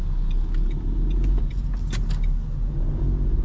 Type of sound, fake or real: real